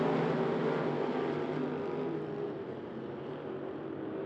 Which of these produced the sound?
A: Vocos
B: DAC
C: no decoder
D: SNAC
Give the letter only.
C